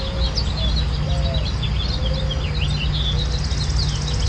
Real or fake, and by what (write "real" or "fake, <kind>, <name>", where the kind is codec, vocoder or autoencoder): real